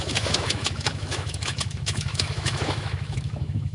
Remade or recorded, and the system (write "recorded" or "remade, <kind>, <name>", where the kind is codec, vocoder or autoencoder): remade, autoencoder, DAC-VAE